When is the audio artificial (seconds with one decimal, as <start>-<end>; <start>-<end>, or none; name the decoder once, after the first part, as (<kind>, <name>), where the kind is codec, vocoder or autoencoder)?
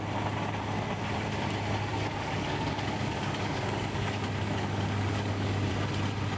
1.9-5.7 (codec, DAC)